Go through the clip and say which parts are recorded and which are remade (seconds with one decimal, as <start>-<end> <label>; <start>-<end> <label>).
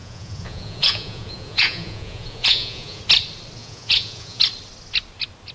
0.0-3.0 remade; 3.0-3.6 recorded; 3.6-4.4 remade; 4.4-5.5 recorded